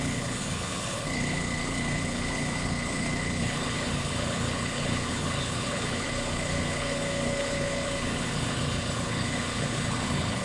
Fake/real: fake